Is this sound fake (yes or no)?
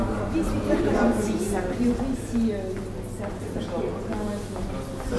no